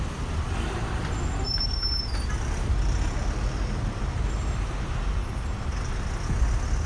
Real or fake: real